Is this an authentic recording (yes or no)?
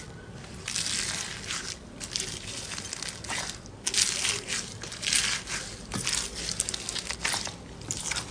yes